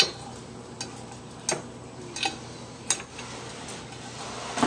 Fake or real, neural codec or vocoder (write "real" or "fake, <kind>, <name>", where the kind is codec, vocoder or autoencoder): real